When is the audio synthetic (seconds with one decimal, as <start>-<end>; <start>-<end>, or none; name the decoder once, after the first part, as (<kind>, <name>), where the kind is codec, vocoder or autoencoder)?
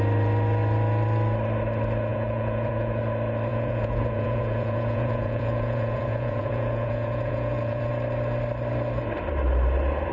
2.1-3.0 (vocoder, Vocos); 3.5-7.9